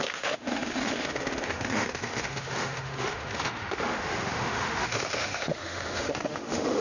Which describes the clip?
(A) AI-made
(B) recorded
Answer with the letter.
A